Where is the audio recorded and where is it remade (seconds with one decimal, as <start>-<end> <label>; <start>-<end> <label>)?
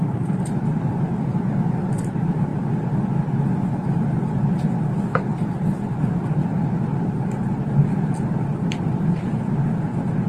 0.0-2.5 remade; 2.5-5.8 recorded; 5.8-10.3 remade